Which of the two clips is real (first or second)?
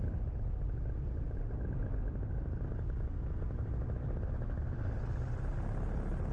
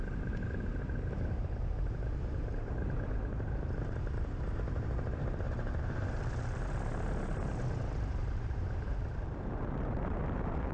first